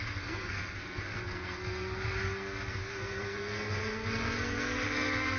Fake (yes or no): yes